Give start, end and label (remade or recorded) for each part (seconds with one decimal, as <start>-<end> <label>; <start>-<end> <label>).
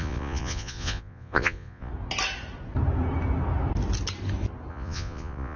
0.0-1.9 remade; 1.9-4.7 recorded; 4.7-5.6 remade